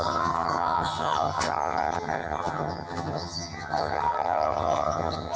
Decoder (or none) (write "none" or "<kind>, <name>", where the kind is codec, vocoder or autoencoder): vocoder, HiFi-GAN